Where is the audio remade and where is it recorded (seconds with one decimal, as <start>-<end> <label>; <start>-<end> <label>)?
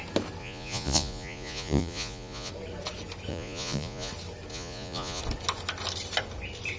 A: 0.0-0.4 recorded; 0.4-2.5 remade; 2.5-3.3 recorded; 3.3-4.1 remade; 4.1-4.5 recorded; 4.5-5.2 remade; 5.2-6.8 recorded